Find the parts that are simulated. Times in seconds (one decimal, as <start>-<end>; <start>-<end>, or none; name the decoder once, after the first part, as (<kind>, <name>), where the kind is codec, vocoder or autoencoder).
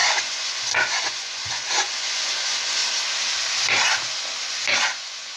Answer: 0.0-2.8 (vocoder, Vocos); 4.7-5.4